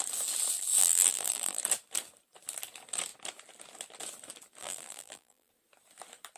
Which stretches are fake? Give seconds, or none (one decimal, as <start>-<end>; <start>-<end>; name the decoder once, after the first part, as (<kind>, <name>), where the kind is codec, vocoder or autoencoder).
0.8-1.6 (vocoder, BigVGAN v2); 4.6-5.5